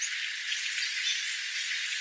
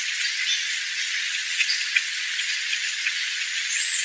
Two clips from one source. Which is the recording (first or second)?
first